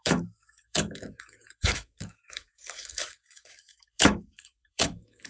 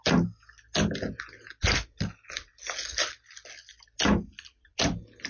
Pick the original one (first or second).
second